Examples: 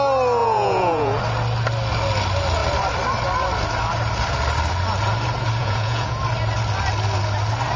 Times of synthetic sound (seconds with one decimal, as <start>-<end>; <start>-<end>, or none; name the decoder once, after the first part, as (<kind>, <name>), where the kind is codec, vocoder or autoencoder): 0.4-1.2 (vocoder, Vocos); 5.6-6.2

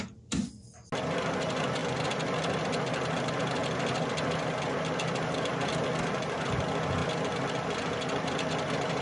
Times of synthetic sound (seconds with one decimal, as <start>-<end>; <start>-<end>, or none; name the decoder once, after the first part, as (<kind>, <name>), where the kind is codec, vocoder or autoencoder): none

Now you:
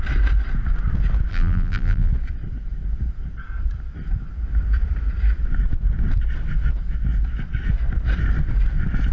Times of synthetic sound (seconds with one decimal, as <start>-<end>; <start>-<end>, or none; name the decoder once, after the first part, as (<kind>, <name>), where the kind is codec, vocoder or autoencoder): 1.3-2.1 (vocoder, BigVGAN v2)

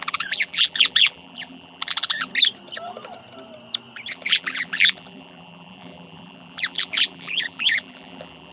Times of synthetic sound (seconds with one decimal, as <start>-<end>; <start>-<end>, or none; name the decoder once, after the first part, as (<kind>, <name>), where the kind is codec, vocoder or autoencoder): 0.0-2.3 (vocoder, BigVGAN v2); 4.1-8.5

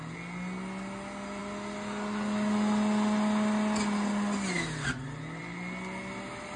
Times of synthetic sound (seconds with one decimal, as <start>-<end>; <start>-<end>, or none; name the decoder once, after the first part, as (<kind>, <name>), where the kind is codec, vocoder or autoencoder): none

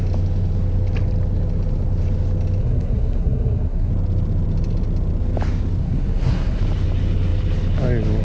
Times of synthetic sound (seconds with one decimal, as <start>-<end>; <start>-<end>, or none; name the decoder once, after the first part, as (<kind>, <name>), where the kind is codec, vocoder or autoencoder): 2.6-3.9 (codec, SNAC); 5.8-6.6

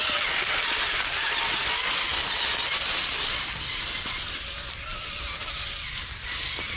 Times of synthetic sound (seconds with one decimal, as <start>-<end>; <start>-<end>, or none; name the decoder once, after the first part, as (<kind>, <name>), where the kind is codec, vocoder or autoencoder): none

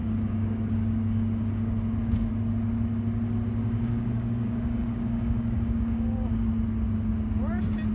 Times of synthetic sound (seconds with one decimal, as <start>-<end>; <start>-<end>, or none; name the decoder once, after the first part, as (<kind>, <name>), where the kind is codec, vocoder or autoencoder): 0.0-2.3 (codec, DAC); 3.6-6.5